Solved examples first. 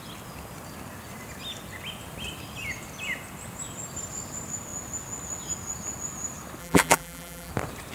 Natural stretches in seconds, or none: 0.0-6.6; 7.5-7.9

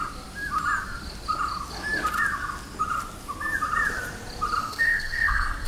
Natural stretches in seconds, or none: 0.0-4.6

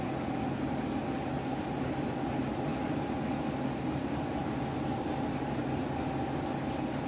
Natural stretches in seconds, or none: 0.0-7.1

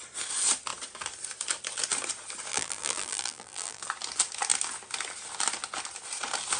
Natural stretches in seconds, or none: 0.0-2.5; 3.8-6.6

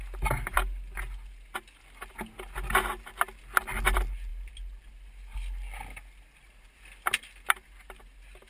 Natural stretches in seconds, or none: 0.0-8.5

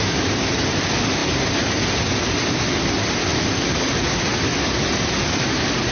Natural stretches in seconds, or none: 0.0-5.9

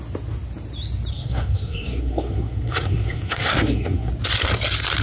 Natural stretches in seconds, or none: 0.0-1.1; 4.1-5.0